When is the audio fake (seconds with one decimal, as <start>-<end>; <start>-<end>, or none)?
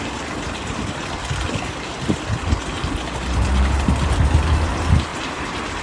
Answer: none